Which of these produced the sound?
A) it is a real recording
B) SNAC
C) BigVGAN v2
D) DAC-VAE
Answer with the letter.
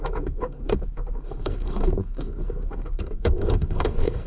B